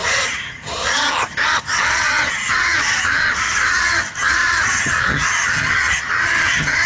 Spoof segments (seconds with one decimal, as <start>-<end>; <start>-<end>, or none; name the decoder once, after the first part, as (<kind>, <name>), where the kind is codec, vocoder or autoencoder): 0.0-6.9 (vocoder, HiFi-GAN)